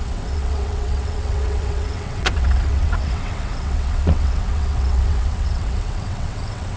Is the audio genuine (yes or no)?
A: no